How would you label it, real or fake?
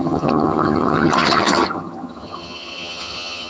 fake